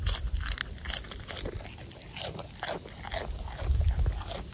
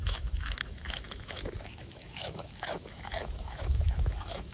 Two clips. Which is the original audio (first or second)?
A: first